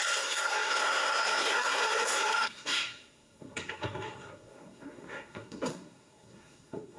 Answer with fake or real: fake